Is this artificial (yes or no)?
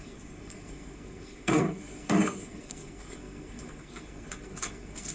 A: yes